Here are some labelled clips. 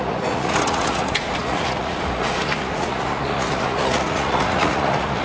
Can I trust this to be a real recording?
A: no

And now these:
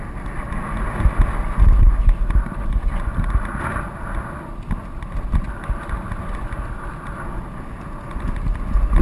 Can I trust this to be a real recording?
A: yes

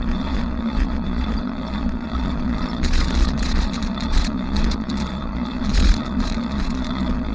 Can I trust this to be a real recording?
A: no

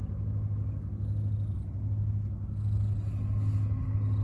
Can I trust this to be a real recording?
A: yes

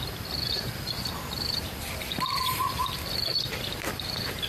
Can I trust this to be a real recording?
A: no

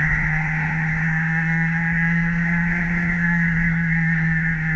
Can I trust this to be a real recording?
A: no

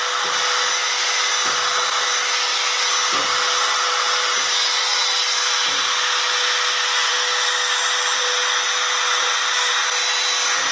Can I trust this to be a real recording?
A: yes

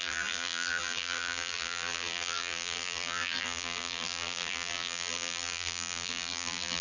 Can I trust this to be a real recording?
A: no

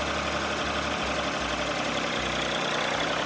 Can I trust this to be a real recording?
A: yes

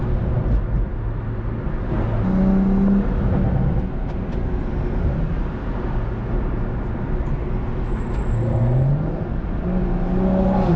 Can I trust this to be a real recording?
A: yes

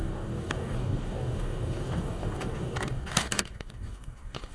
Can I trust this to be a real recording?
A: no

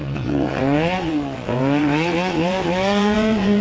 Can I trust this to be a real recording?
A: no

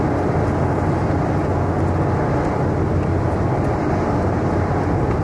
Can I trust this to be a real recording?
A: yes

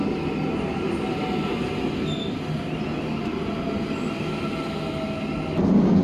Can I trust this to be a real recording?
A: yes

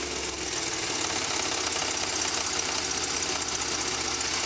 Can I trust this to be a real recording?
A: yes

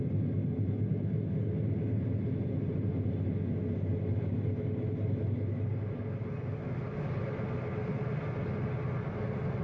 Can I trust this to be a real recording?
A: yes